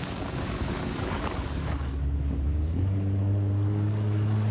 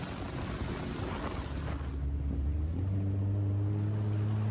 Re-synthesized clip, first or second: first